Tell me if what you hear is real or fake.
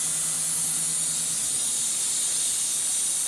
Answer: real